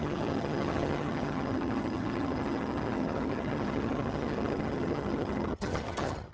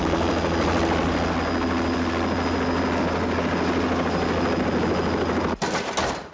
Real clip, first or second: second